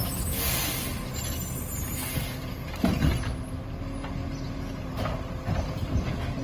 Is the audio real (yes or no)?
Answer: yes